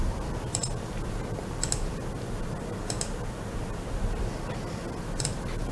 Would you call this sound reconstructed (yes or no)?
no